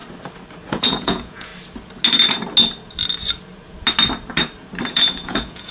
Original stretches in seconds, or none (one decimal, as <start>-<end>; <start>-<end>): 0.0-0.8; 1.5-4.9